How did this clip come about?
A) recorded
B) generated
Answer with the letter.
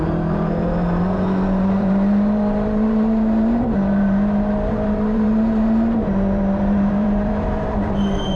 B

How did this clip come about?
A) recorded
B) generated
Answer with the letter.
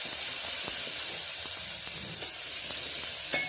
A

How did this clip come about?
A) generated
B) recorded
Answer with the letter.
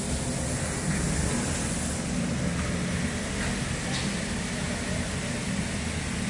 B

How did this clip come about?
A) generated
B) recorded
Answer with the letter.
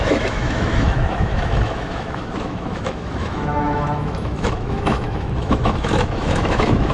A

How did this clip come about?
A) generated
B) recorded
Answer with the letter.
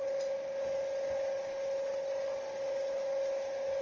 B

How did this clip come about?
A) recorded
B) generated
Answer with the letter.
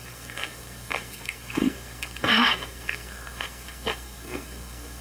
B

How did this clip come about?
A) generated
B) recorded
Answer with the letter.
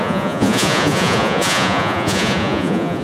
A